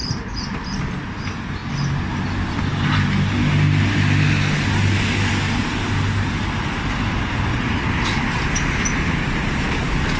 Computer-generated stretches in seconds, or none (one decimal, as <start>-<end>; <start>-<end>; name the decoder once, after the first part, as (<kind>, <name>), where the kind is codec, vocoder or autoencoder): none